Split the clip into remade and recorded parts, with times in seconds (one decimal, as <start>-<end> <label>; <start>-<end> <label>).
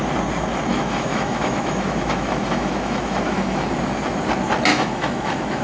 0.0-0.7 recorded; 0.7-3.7 remade; 3.7-4.7 recorded; 4.7-5.6 remade